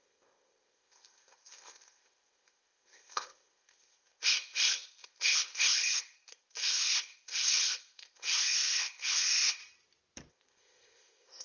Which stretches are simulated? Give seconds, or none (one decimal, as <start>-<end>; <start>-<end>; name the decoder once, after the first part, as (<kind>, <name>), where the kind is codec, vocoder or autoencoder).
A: 0.0-9.6 (codec, ZipCodec); 10.3-11.4